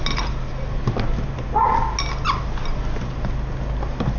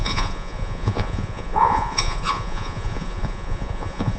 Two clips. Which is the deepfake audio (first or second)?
second